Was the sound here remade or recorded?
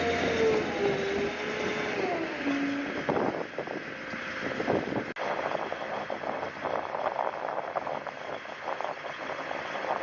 recorded